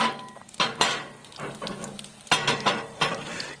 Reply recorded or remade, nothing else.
recorded